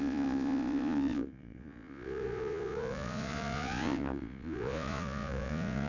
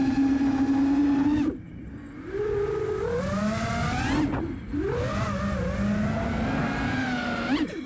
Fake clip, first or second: first